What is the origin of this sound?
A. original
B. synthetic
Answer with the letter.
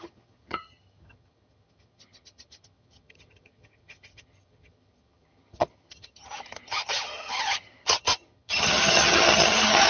B